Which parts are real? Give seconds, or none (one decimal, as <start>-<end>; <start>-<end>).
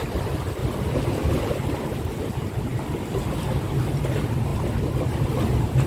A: 0.0-0.6; 1.4-2.7; 3.6-4.5; 5.1-5.9